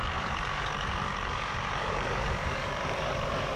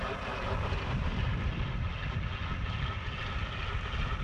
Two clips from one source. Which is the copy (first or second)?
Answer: first